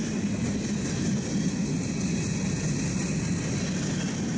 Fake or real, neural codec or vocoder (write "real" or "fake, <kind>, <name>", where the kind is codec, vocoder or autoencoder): real